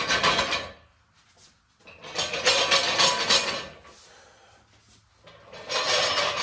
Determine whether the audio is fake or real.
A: real